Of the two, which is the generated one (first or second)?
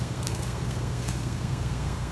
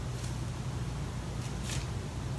first